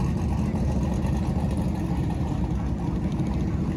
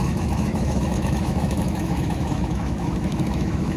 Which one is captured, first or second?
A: first